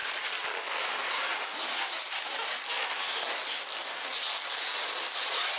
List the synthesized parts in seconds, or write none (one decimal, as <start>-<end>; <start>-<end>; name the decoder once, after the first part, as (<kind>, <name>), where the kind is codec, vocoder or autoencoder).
none